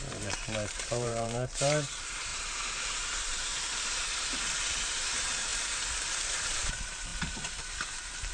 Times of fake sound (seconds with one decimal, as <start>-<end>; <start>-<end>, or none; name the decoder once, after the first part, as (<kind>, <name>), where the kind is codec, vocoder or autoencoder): 0.0-5.5 (vocoder, BigVGAN v2); 6.2-8.3